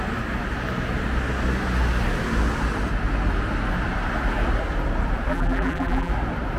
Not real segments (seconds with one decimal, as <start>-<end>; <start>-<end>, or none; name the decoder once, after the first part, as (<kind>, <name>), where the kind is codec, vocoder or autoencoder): 5.3-6.1 (vocoder, BigVGAN v2)